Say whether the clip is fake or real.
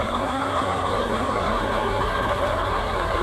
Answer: fake